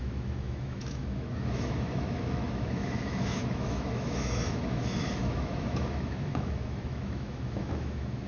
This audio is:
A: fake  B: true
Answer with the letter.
A